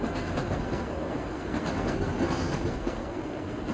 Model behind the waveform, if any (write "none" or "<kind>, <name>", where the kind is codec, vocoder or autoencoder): codec, SNAC